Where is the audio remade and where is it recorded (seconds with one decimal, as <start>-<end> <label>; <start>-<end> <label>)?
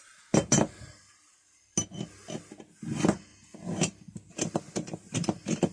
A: 0.0-5.7 recorded